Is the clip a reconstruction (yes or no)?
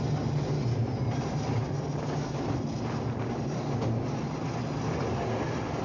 no